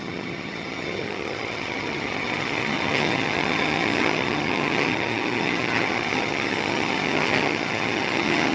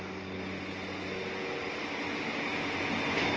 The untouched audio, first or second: second